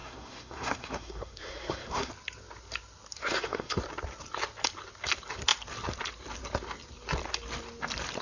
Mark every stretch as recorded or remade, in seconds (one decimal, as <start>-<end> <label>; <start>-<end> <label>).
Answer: 0.0-2.1 remade; 2.1-3.2 recorded; 3.2-3.8 remade; 3.8-8.2 recorded